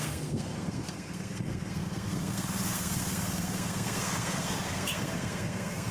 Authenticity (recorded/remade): remade